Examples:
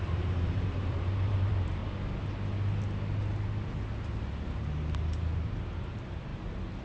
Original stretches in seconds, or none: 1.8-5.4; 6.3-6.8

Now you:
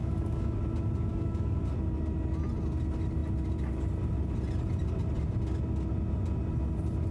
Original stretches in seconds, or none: 0.6-1.1; 1.6-7.1

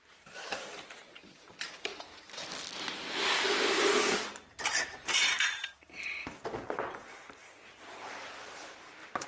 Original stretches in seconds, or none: 1.9-4.6